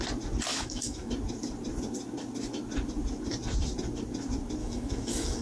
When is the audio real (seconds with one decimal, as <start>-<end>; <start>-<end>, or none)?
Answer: 0.0-0.5; 1.1-4.6